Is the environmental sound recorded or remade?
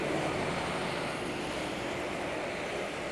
recorded